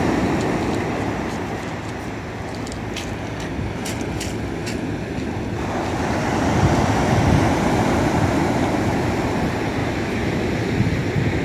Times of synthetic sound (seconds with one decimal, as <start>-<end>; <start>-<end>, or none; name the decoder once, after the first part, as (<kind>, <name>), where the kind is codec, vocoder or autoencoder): 9.8-10.5 (autoencoder, DAC-VAE)